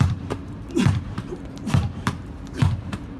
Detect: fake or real fake